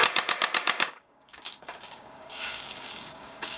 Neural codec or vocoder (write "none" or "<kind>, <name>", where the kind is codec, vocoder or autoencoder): codec, DAC